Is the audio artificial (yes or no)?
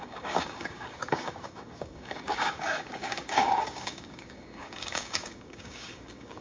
yes